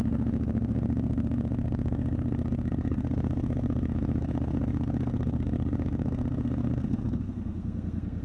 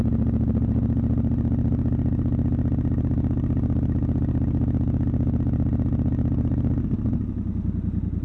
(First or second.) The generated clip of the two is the first